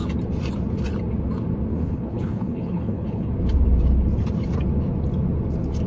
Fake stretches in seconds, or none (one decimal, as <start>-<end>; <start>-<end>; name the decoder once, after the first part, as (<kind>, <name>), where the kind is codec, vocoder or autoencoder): 1.7-3.3 (codec, HILCodec)